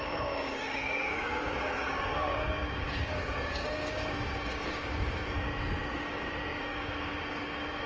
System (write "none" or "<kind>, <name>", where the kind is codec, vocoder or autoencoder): codec, DAC